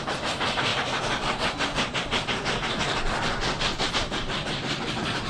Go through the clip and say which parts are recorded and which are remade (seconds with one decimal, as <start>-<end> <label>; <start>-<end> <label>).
0.0-0.7 remade; 0.7-3.9 recorded; 3.9-5.3 remade

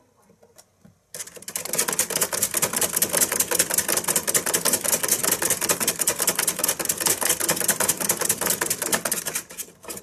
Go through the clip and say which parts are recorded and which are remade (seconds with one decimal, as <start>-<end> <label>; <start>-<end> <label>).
0.0-10.0 recorded

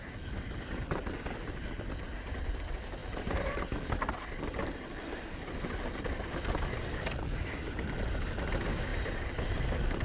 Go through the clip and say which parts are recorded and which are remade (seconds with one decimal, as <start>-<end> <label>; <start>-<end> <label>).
0.0-10.0 recorded

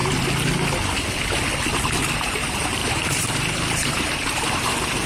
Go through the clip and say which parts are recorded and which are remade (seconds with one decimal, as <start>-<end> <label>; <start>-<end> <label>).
0.0-2.0 recorded; 2.0-5.1 remade

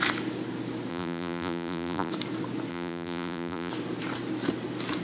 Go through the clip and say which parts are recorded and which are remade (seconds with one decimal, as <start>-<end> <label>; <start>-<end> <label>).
0.0-0.9 recorded; 0.9-2.1 remade; 2.1-2.7 recorded; 2.7-3.7 remade; 3.7-5.0 recorded

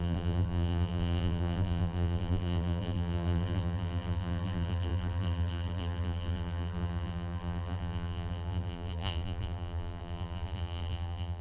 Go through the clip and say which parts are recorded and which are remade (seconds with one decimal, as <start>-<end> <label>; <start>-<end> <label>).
0.0-11.4 remade

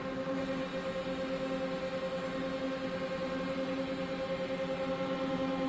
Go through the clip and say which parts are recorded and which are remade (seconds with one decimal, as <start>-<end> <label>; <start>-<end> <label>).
0.0-0.7 remade; 0.7-3.4 recorded; 3.4-5.7 remade